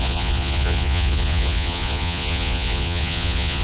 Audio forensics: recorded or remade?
remade